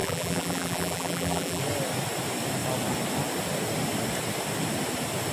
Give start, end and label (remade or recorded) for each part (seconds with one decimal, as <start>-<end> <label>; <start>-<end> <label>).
0.0-1.6 remade; 1.6-5.3 recorded